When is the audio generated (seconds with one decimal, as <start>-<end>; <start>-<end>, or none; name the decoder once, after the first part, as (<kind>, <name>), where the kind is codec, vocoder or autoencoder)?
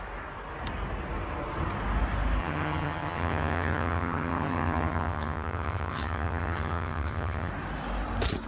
2.4-7.5 (vocoder, HiFi-GAN)